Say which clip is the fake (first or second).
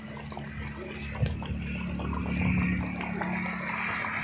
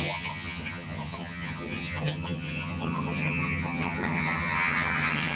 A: second